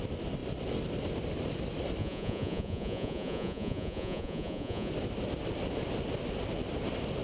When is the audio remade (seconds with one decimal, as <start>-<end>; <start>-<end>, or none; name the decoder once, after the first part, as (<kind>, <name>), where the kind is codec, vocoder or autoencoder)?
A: 2.0-4.9 (vocoder, Vocos)